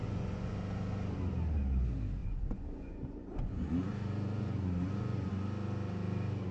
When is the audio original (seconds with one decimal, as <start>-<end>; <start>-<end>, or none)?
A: 0.5-2.2; 5.3-6.5

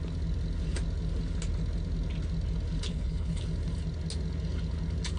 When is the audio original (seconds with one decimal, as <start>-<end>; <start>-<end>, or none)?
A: 0.0-2.9; 3.4-5.2